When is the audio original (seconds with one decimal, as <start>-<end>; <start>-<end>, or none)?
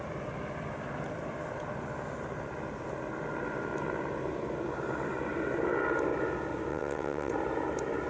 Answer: 0.0-6.7; 7.3-8.1